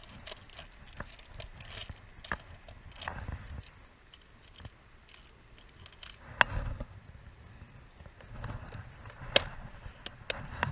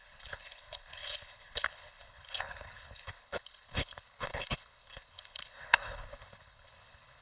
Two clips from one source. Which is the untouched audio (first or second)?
first